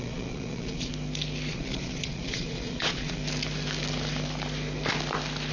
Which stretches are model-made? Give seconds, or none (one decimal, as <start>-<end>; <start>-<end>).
0.0-0.9; 1.5-3.2